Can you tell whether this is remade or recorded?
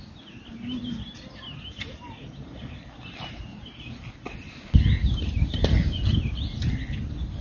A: recorded